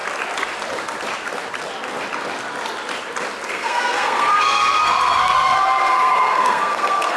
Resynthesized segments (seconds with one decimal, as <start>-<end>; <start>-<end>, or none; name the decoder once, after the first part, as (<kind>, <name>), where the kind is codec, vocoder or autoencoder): 3.5-7.2 (codec, SNAC)